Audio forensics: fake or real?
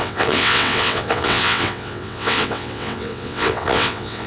fake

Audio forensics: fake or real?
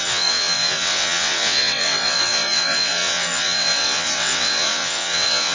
fake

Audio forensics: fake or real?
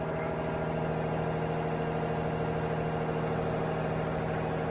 real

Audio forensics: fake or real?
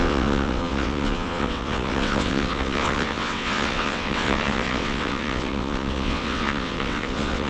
fake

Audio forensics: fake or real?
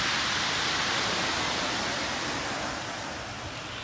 real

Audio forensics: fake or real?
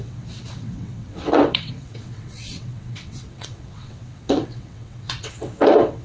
fake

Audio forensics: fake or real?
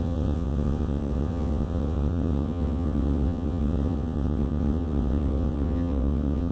fake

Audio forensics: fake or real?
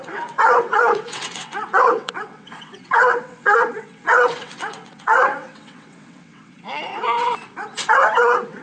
fake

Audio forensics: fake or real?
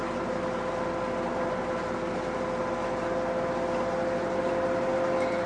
real